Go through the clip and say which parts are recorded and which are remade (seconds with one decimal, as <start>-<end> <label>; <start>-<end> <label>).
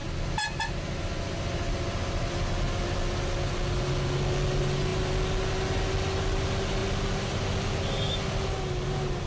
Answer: 0.0-9.3 recorded